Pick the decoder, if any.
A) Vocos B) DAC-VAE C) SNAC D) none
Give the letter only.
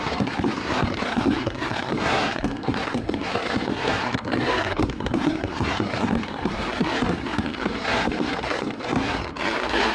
C